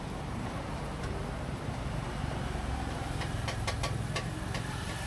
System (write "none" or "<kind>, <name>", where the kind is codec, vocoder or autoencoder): vocoder, BigVGAN v2